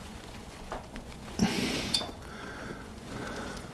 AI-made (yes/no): yes